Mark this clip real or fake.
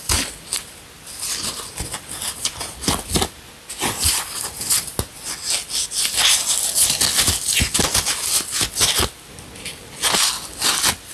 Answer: real